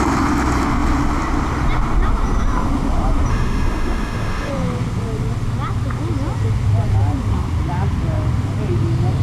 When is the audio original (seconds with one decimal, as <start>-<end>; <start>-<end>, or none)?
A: 0.0-3.3; 4.5-9.2